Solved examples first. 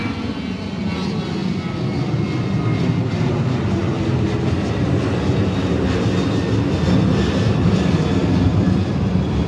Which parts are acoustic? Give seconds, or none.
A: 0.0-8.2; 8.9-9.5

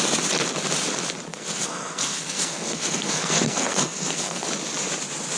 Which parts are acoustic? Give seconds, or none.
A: 0.0-1.3; 4.5-5.4

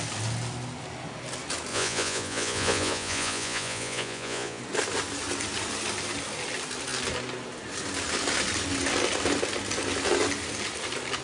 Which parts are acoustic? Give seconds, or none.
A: 0.0-1.7; 4.6-11.2

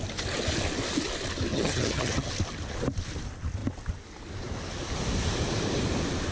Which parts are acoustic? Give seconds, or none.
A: 0.0-1.5; 2.3-6.3

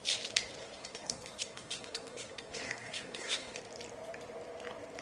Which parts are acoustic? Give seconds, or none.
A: 0.0-0.6; 3.6-5.0